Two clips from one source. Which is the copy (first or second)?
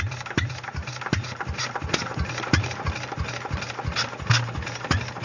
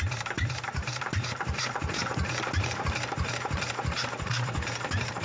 second